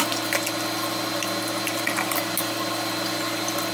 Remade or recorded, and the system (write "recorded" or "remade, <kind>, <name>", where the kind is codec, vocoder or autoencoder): recorded